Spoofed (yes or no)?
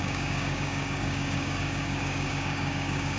yes